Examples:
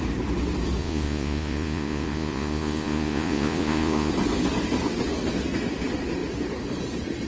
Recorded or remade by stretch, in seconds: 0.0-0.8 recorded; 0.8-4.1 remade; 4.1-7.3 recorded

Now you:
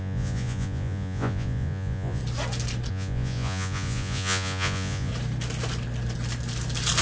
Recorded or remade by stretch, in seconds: 0.0-2.2 remade; 2.2-2.9 recorded; 2.9-5.1 remade; 5.1-7.0 recorded

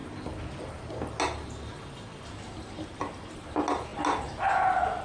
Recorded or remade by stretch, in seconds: 0.0-5.0 recorded

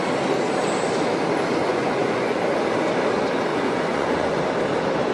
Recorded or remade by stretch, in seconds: 0.0-1.6 recorded; 1.6-2.4 remade; 2.4-3.5 recorded; 3.5-4.4 remade; 4.4-5.1 recorded

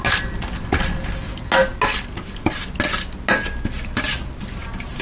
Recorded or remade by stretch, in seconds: 0.0-5.0 recorded

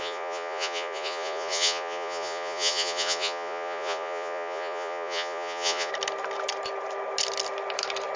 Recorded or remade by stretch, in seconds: 0.0-5.9 remade; 5.9-8.2 recorded